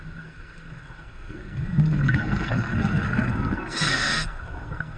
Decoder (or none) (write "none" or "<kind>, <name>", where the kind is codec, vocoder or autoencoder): codec, SNAC